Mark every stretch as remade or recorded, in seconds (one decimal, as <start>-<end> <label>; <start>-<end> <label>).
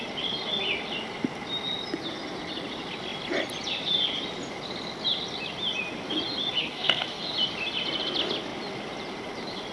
0.0-6.6 recorded; 6.6-7.2 remade; 7.2-9.7 recorded